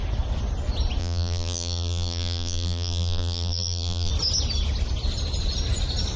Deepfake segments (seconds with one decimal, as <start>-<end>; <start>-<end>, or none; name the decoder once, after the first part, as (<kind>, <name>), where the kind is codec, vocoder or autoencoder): 1.0-4.1 (vocoder, BigVGAN v2)